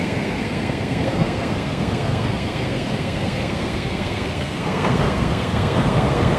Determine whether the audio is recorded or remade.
remade